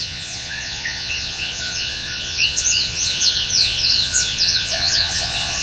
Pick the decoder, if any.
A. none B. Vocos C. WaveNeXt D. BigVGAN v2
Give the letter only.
B